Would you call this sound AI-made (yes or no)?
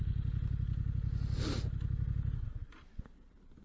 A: no